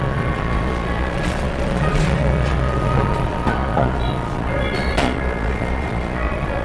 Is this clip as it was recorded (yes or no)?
no